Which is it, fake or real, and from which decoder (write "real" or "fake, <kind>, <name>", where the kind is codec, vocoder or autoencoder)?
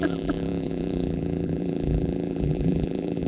fake, vocoder, BigVGAN v2